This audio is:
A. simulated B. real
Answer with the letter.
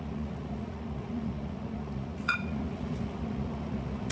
A